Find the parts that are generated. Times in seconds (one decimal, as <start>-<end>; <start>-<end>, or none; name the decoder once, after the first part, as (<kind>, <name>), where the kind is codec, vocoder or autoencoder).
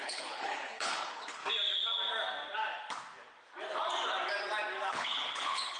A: 0.0-1.4 (codec, HILCodec); 4.9-5.8